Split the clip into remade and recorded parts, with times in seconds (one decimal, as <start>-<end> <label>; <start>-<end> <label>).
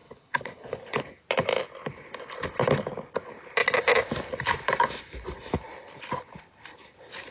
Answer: 0.0-1.0 remade; 1.0-7.3 recorded